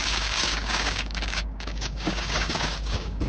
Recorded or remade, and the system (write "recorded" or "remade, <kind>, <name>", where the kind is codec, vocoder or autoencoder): remade, codec, DAC